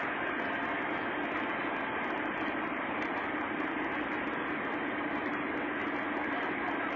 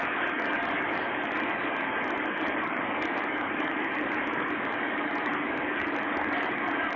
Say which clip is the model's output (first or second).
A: second